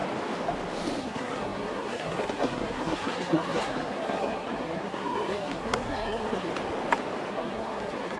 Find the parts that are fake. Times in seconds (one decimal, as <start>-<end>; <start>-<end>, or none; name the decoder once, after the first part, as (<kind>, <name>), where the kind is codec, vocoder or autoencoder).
1.0-6.5 (codec, SNAC); 7.3-8.2